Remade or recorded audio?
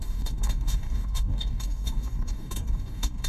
remade